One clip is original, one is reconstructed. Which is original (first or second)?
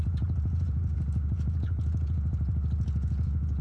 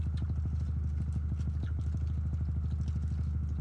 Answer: second